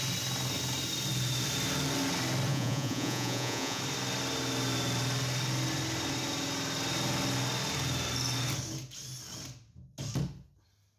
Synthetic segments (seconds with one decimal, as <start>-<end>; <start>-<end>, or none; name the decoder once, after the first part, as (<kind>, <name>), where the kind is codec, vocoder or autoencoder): 2.5-3.8 (vocoder, Vocos)